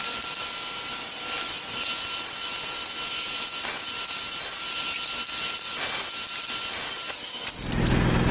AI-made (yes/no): no